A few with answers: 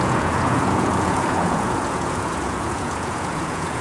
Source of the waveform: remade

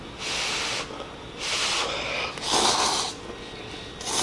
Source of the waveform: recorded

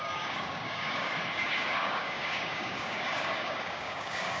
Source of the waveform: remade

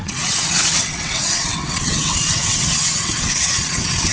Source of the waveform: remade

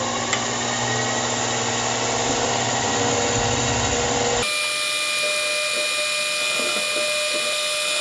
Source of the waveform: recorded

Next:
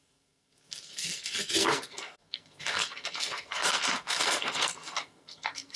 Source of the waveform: remade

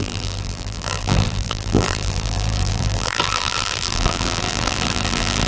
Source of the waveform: remade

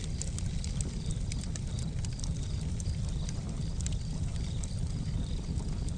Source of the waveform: recorded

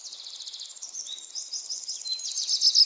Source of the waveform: recorded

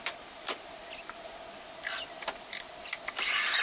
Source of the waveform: recorded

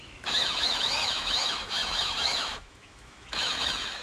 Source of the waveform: remade